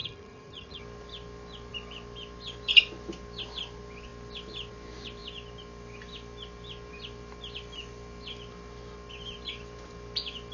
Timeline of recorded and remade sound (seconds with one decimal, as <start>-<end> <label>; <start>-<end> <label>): 0.0-0.8 remade; 0.8-10.5 recorded